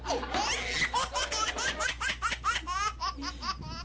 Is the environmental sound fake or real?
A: real